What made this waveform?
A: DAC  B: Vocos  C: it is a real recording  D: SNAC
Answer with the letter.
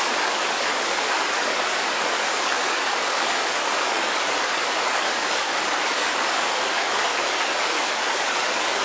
A